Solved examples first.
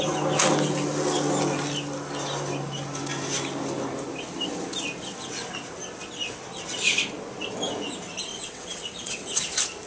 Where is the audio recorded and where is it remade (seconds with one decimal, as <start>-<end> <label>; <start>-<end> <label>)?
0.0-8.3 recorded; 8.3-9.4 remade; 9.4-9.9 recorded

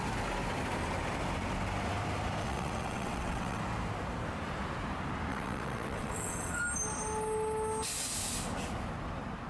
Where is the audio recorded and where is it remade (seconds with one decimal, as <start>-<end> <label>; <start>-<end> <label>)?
0.0-2.4 recorded; 2.4-3.6 remade; 3.6-5.3 recorded; 5.3-6.6 remade; 6.6-9.5 recorded

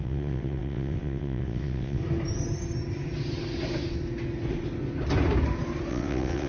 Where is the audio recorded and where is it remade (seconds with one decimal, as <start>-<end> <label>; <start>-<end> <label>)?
0.0-2.0 remade; 2.0-5.9 recorded; 5.9-6.5 remade

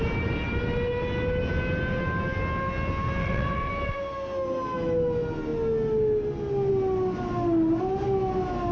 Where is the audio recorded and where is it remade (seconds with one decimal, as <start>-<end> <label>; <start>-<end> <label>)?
0.0-3.2 recorded; 3.2-3.7 remade; 3.7-8.7 recorded

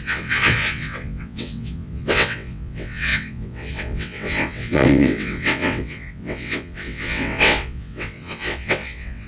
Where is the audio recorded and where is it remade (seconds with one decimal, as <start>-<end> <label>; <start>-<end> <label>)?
0.0-9.3 remade

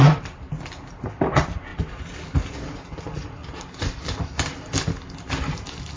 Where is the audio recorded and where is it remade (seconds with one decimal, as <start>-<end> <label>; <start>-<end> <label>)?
0.0-6.0 recorded